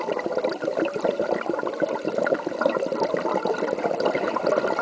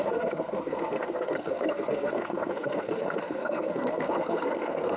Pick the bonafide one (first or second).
first